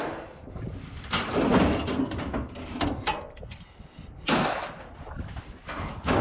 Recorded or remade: recorded